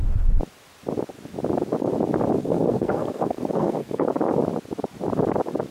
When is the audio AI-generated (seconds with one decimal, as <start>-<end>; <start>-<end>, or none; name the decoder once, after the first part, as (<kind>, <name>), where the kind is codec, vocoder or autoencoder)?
2.4-4.1 (codec, SNAC)